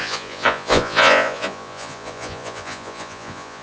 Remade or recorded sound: remade